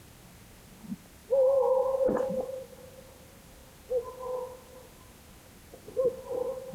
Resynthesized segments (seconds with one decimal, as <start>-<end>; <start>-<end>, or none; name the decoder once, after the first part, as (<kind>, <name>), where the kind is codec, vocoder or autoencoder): none

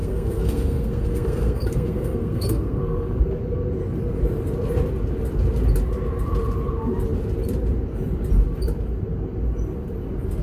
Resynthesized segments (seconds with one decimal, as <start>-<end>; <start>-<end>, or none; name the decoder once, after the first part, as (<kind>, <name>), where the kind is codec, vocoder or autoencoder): 0.0-3.2 (codec, SNAC)

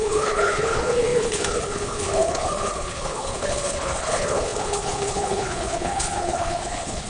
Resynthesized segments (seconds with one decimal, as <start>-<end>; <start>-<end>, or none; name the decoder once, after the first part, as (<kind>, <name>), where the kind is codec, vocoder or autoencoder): 0.0-7.1 (codec, HILCodec)

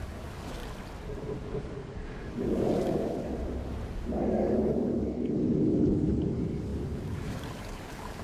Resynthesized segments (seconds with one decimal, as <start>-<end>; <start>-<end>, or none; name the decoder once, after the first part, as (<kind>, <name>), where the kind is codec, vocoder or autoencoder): 0.0-0.6 (codec, DAC); 1.6-3.3; 3.9-8.2

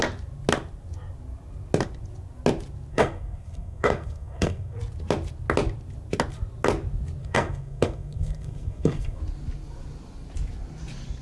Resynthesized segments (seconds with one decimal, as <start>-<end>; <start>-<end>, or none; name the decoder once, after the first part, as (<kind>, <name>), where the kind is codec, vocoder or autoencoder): 2.9-4.8 (codec, SNAC); 7.2-9.2

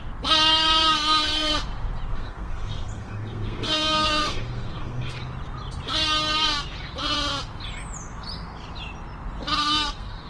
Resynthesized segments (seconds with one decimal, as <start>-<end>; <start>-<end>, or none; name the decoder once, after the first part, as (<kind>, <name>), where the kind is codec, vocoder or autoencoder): 0.5-1.5 (codec, SNAC); 2.1-5.2; 9.6-10.3

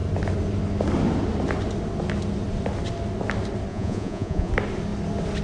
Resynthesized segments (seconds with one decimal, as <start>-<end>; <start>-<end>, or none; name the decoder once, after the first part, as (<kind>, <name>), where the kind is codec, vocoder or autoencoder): 3.7-4.5 (vocoder, Vocos)

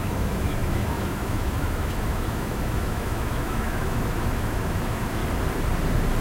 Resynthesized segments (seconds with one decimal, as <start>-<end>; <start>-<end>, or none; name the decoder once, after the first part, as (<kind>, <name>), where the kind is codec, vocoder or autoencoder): 0.0-5.2 (autoencoder, DAC-VAE)